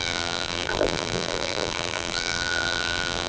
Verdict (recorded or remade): remade